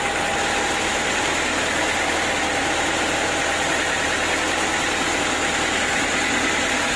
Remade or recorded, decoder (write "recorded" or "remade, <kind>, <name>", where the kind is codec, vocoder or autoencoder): recorded